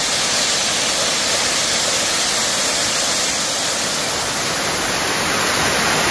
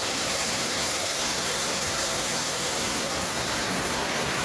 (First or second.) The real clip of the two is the first